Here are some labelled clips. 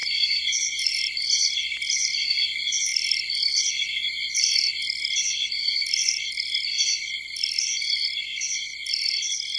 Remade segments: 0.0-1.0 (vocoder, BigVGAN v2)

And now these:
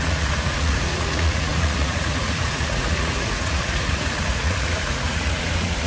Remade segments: 0.0-5.9 (vocoder, Vocos)

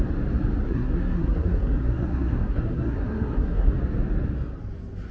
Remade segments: 0.6-3.7 (codec, SNAC)

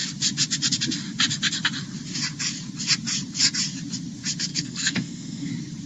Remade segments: 4.5-5.5 (codec, SNAC)

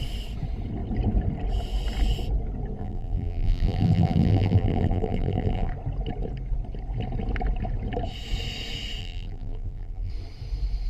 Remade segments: 2.8-5.7 (vocoder, BigVGAN v2); 9.0-10.1

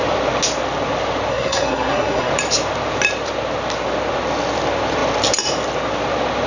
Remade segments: 1.3-2.3 (codec, SNAC)